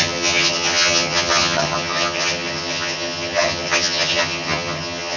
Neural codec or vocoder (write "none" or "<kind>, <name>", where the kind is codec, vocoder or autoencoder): vocoder, HiFi-GAN